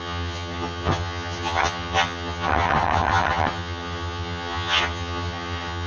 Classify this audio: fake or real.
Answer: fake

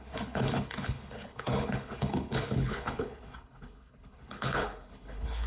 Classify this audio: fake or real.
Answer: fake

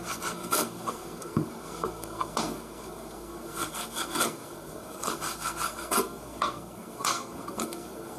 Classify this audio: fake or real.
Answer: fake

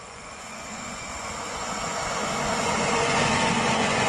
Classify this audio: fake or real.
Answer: fake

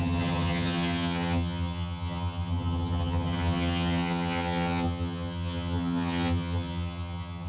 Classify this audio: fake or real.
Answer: fake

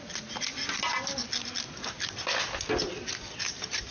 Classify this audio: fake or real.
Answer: real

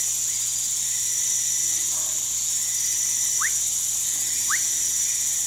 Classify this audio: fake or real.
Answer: real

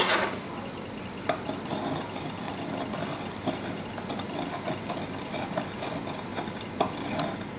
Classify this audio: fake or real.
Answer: real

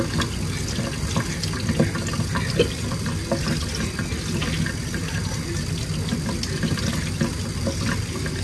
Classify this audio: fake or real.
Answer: real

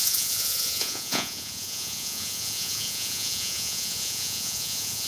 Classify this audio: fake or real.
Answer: fake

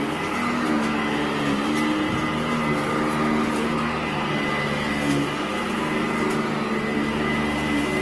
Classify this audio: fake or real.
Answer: real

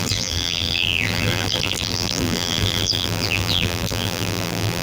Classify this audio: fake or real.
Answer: fake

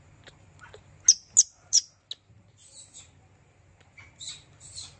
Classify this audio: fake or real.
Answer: real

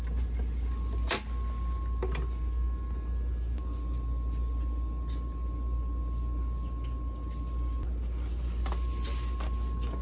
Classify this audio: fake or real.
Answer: real